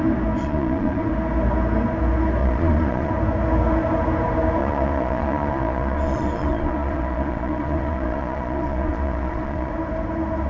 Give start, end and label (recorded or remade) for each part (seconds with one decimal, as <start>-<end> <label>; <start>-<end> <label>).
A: 0.0-0.4 recorded; 0.4-1.1 remade; 1.1-2.4 recorded; 2.4-3.1 remade; 3.1-4.6 recorded; 4.6-9.7 remade; 9.7-10.5 recorded